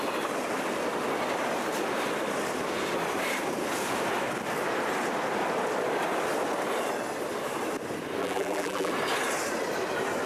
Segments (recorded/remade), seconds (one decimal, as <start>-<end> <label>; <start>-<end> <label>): 0.0-8.2 recorded; 8.2-8.9 remade; 8.9-10.3 recorded

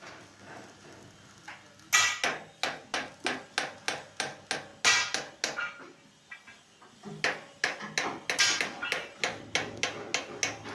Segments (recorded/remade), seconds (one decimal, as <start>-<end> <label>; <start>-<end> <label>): 0.0-10.7 recorded

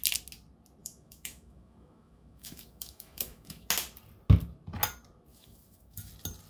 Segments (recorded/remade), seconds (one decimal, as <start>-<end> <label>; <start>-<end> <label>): 0.0-0.8 recorded; 0.8-3.7 remade; 3.7-5.3 recorded; 5.3-6.1 remade; 6.1-6.5 recorded

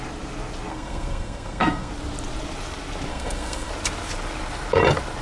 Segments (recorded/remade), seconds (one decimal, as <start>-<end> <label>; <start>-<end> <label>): 0.0-0.7 recorded; 0.7-1.9 remade; 1.9-3.1 recorded; 3.1-3.7 remade; 3.7-5.2 recorded